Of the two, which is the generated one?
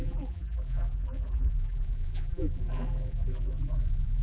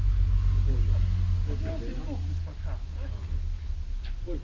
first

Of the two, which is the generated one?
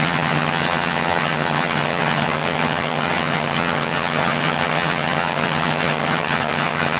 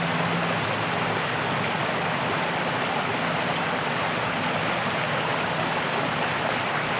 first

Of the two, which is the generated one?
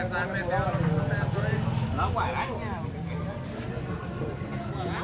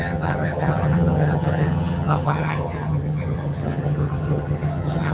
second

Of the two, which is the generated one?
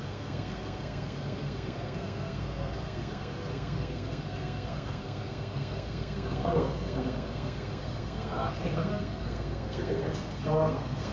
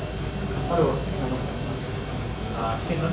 first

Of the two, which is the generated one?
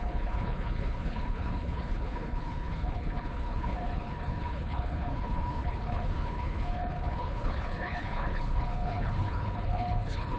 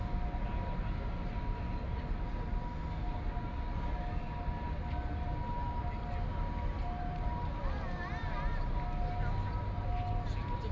first